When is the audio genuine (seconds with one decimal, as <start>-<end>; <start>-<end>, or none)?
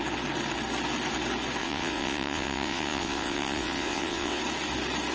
0.0-1.6; 4.4-5.1